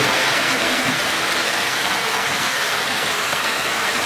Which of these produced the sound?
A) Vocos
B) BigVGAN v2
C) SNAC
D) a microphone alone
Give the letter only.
C